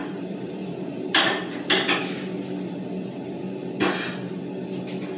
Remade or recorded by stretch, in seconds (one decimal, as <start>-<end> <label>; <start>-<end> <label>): 0.0-1.4 remade; 1.4-5.2 recorded